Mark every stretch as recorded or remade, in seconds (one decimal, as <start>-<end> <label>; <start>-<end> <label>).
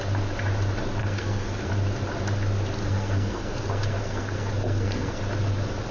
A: 0.0-1.0 recorded; 1.0-1.7 remade; 1.7-2.8 recorded; 2.8-5.2 remade; 5.2-5.9 recorded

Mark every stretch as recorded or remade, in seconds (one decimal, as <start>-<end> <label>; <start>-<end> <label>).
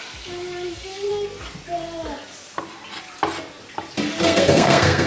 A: 0.0-0.7 recorded; 0.7-1.1 remade; 1.1-4.2 recorded; 4.2-5.1 remade